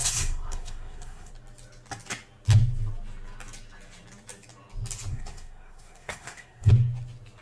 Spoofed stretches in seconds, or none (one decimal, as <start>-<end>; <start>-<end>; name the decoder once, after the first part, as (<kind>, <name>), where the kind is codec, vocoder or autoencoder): 0.0-1.3 (codec, SNAC); 5.1-6.7